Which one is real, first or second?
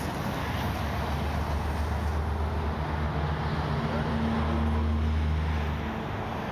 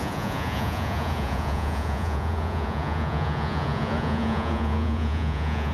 first